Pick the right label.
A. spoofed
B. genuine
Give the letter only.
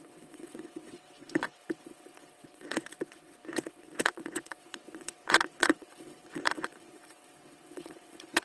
A